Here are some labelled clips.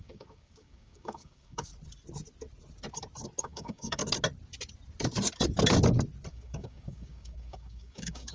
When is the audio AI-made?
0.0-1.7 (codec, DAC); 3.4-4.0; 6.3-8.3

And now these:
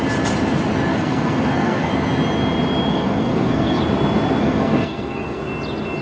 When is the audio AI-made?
0.9-1.9 (codec, SNAC); 2.9-3.8; 4.4-5.4